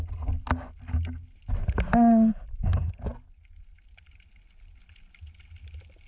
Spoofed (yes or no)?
no